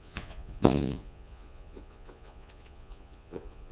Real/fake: fake